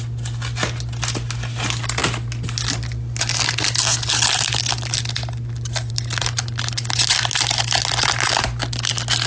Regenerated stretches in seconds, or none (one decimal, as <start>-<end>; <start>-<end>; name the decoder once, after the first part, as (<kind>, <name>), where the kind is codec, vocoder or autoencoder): none